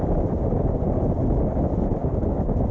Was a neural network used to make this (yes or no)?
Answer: no